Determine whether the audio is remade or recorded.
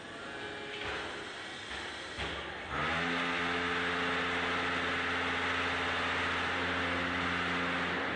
recorded